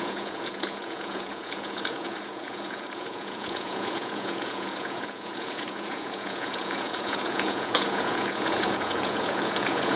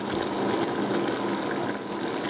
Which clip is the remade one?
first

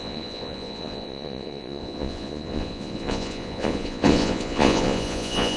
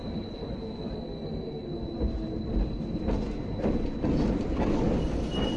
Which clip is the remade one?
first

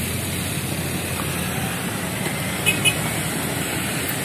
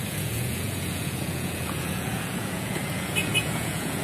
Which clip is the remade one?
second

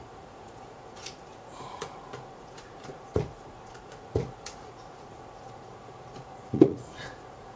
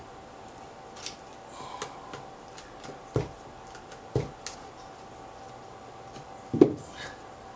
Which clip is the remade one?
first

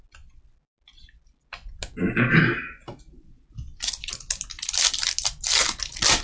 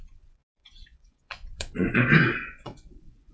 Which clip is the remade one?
second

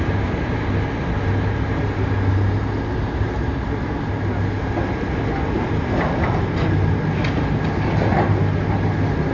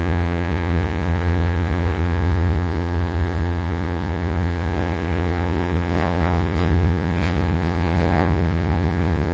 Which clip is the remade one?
second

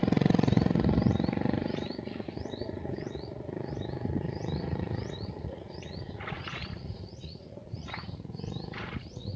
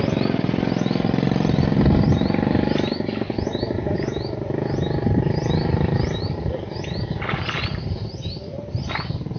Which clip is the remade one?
first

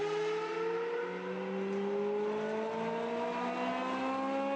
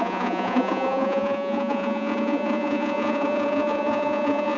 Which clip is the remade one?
second